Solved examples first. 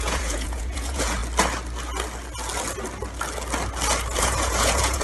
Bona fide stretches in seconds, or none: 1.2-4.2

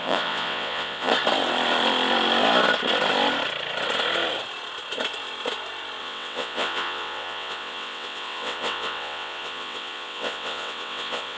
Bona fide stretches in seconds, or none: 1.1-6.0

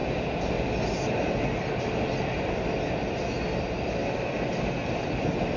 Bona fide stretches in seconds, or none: 0.0-5.6